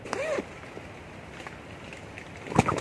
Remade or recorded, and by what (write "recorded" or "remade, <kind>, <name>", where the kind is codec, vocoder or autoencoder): recorded